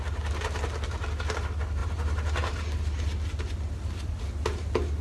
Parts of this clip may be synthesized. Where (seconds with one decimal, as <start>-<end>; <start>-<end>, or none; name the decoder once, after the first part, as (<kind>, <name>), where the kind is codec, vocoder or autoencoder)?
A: none